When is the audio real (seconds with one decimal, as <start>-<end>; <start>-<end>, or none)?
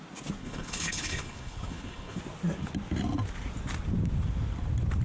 0.0-0.4; 2.2-5.0